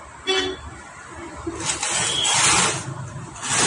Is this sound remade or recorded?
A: recorded